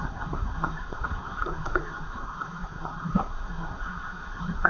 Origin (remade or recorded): remade